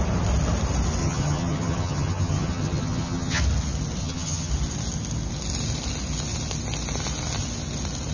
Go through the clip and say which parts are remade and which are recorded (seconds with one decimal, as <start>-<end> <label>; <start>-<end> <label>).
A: 0.0-1.0 recorded; 1.0-3.4 remade; 3.4-4.0 recorded; 4.0-4.5 remade; 4.5-8.1 recorded

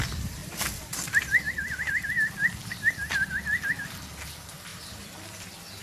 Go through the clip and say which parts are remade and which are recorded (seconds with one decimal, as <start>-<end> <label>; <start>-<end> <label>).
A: 0.0-0.4 recorded; 0.4-3.3 remade; 3.3-4.7 recorded; 4.7-5.8 remade

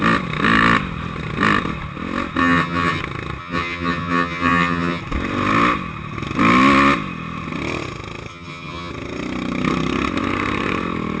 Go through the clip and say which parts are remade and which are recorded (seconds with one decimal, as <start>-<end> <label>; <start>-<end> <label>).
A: 0.0-2.4 recorded; 2.4-3.0 remade; 3.0-3.4 recorded; 3.4-5.0 remade; 5.0-8.3 recorded; 8.3-8.9 remade; 8.9-11.2 recorded

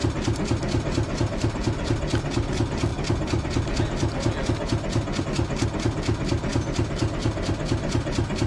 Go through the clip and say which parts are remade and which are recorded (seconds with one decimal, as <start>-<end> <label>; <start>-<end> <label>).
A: 0.0-8.5 recorded

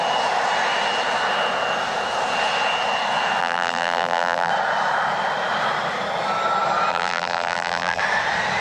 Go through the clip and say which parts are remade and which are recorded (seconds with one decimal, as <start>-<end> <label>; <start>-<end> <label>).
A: 0.0-3.4 recorded; 3.4-4.5 remade; 4.5-6.9 recorded; 6.9-8.0 remade; 8.0-8.6 recorded

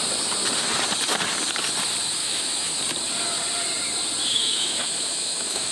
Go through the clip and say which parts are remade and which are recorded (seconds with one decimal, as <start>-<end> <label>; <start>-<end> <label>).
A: 0.0-2.2 recorded; 2.2-2.8 remade; 2.8-4.3 recorded; 4.3-5.7 remade